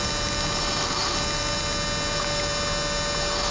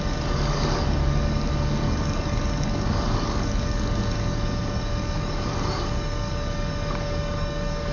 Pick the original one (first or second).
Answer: first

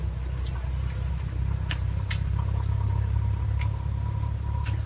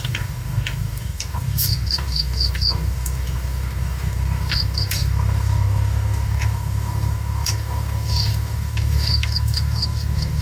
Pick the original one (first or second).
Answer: first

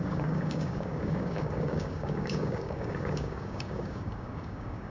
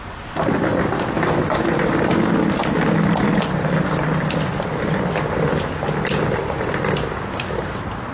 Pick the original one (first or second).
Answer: second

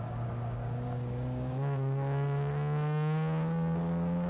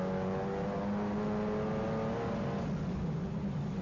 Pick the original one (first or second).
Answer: second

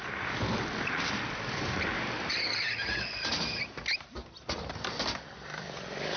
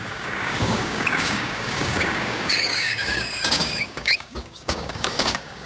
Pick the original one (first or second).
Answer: first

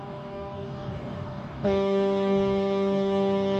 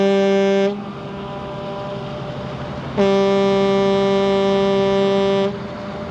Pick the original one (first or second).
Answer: second